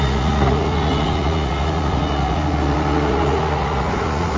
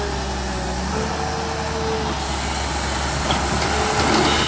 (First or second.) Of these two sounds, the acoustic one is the second